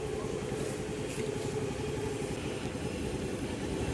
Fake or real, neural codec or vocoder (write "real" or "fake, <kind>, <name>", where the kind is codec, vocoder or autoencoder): real